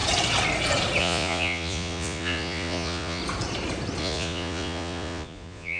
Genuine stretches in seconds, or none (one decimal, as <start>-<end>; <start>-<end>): 0.0-1.0; 3.2-4.0